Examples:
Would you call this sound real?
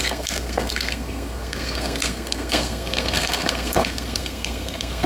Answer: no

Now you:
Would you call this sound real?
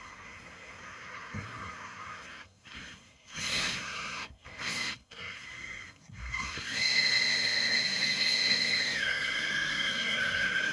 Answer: no